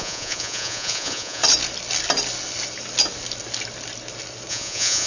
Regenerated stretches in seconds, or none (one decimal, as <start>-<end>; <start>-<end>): 0.0-1.4; 4.5-5.1